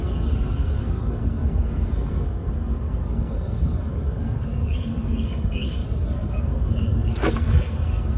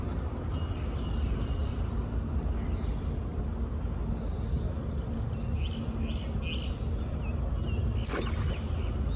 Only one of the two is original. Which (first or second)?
second